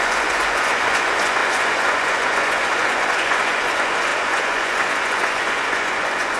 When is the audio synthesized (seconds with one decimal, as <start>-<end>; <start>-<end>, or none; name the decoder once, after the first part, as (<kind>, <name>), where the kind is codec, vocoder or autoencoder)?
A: 0.0-6.4 (vocoder, Vocos)